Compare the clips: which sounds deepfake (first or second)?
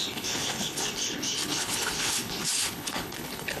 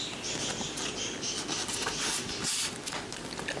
first